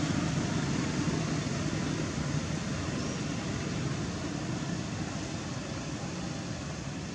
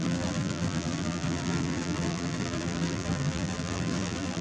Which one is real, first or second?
first